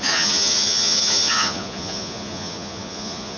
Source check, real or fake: fake